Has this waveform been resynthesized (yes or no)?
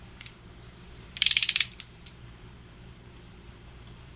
yes